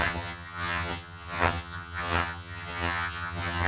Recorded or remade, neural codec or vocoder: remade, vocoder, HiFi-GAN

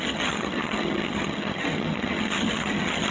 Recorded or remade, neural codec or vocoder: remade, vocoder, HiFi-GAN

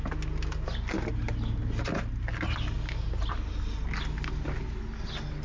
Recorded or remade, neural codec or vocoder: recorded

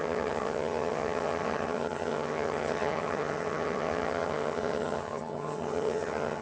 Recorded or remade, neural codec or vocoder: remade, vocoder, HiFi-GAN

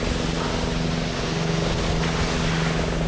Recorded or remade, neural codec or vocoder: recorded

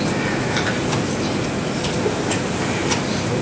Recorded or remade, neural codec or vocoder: recorded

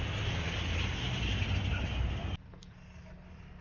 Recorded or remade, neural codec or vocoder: recorded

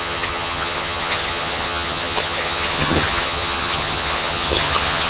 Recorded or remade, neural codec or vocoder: remade, vocoder, HiFi-GAN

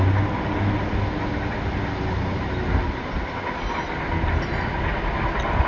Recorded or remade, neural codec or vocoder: recorded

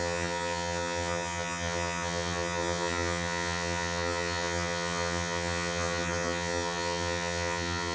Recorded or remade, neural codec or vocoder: remade, vocoder, HiFi-GAN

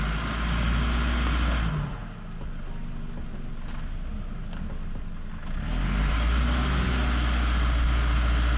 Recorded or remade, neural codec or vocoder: recorded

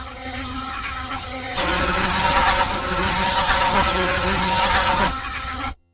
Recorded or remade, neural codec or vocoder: remade, vocoder, HiFi-GAN